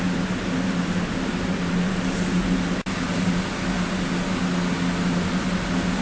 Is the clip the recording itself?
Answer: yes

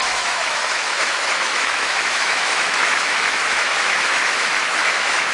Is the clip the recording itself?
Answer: no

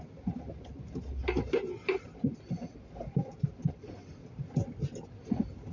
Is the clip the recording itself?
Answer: yes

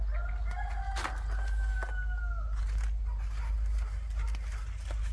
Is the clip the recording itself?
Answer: yes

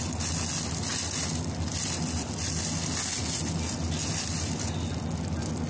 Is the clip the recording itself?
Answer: yes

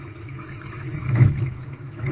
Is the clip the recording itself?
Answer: no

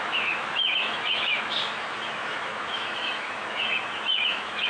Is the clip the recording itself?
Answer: no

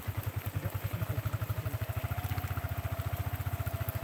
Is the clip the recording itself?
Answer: yes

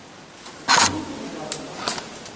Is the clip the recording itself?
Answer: yes